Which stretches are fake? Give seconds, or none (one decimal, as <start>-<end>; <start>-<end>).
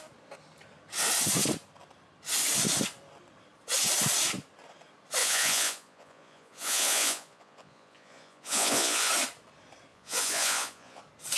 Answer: 5.2-9.1; 9.9-11.0